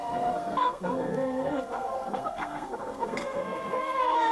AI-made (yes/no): yes